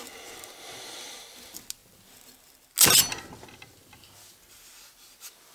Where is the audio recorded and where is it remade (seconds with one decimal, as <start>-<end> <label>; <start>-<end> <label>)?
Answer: 0.0-5.5 recorded